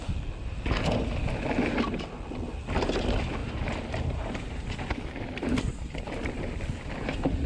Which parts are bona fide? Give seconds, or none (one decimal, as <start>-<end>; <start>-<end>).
0.0-3.4; 6.9-7.5